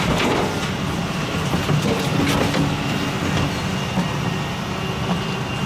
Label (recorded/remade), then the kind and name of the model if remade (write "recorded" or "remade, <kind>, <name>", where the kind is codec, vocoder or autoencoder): recorded